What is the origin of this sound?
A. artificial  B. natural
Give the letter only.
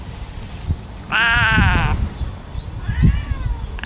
B